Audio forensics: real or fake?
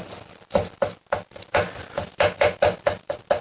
real